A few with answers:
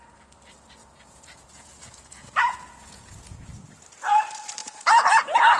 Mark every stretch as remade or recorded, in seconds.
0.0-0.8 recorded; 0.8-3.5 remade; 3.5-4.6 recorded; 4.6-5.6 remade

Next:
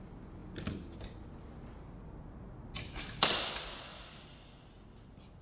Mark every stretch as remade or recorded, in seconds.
0.0-5.4 recorded

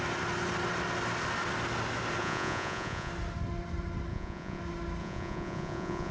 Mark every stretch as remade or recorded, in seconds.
0.0-2.2 recorded; 2.2-3.1 remade; 3.1-4.1 recorded; 4.1-4.6 remade; 4.6-5.0 recorded; 5.0-6.1 remade

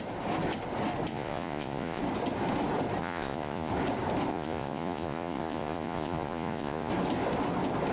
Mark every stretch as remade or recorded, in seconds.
0.0-1.1 recorded; 1.1-2.0 remade; 2.0-3.0 recorded; 3.0-3.7 remade; 3.7-4.3 recorded; 4.3-6.9 remade; 6.9-7.9 recorded

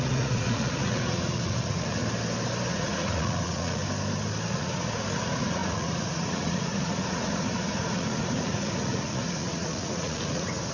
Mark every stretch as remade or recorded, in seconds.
0.0-2.0 remade; 2.0-2.7 recorded; 2.7-3.8 remade; 3.8-4.5 recorded; 4.5-10.7 remade

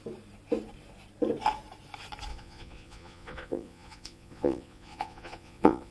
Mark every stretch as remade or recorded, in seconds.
0.0-2.3 recorded; 2.3-5.9 remade

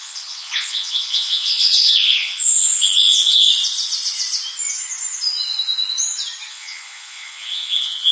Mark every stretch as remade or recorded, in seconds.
0.0-3.5 remade; 3.5-6.5 recorded; 6.5-8.1 remade

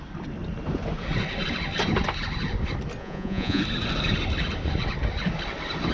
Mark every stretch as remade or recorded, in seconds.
0.0-3.0 recorded; 3.0-3.6 remade; 3.6-5.9 recorded